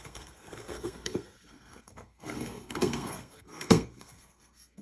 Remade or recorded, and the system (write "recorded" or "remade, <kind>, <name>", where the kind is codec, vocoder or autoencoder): remade, codec, SNAC